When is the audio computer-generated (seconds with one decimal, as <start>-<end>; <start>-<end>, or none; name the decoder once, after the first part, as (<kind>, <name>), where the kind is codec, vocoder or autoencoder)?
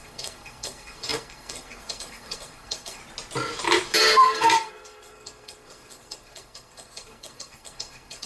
0.0-3.0 (codec, SNAC); 4.0-8.3